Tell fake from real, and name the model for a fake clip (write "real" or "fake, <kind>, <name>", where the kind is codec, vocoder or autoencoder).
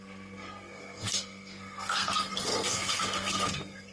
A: fake, codec, SNAC